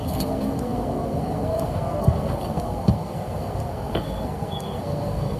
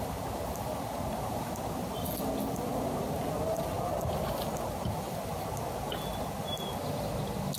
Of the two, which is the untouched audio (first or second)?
second